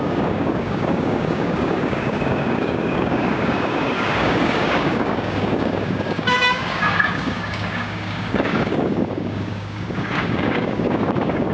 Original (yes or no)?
no